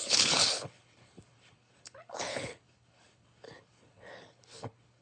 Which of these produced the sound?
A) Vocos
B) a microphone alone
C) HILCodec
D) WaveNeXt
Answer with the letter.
C